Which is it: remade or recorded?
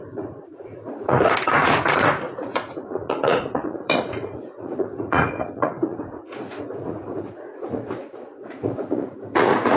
remade